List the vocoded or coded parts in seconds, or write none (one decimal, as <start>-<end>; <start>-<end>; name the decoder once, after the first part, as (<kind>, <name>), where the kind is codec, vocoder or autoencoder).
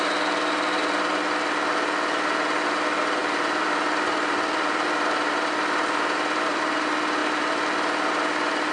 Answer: 3.2-6.8 (vocoder, BigVGAN v2)